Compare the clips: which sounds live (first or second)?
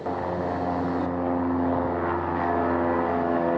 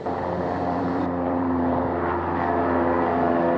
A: first